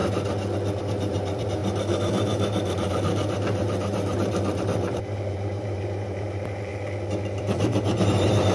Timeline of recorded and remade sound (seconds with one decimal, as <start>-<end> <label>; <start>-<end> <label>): 0.0-0.8 recorded; 0.8-6.7 remade; 6.7-7.4 recorded; 7.4-8.5 remade